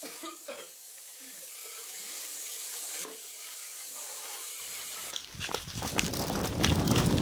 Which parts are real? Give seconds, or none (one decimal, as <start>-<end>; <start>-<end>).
4.5-5.1; 6.1-6.8